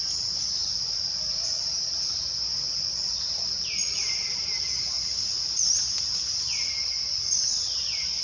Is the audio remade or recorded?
recorded